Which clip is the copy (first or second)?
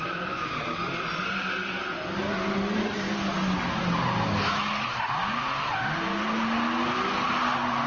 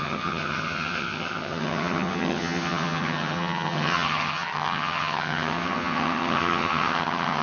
second